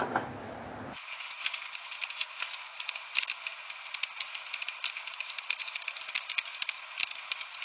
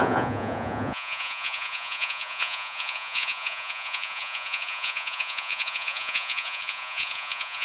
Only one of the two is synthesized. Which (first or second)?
second